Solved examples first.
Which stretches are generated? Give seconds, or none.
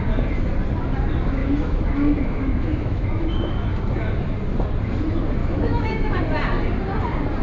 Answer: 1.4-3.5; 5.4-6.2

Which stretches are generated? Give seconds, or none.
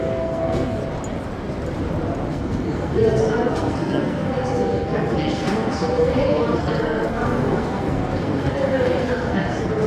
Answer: 0.0-0.8; 2.3-9.9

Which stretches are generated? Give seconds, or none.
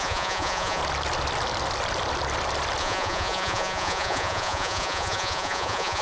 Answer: 0.0-0.8; 2.8-6.0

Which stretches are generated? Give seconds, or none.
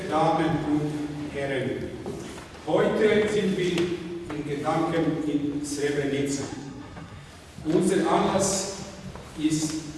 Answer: 6.5-7.3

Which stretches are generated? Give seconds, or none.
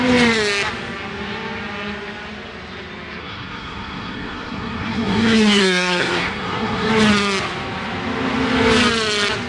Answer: 3.2-6.9